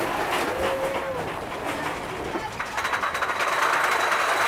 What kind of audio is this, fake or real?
real